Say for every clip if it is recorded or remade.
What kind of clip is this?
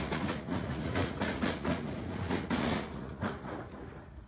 remade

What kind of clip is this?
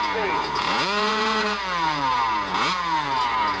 remade